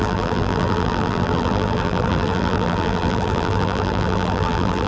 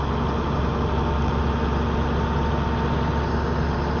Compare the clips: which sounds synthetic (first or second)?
first